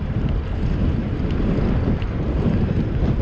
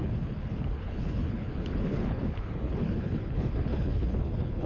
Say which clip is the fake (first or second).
second